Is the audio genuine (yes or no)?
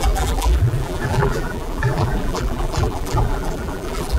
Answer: no